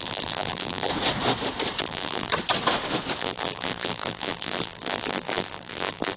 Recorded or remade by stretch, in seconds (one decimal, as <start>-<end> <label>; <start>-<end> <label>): 0.0-0.9 remade; 0.9-1.8 recorded; 1.8-2.3 remade; 2.3-3.2 recorded; 3.2-6.2 remade